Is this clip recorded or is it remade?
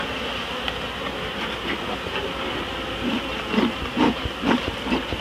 recorded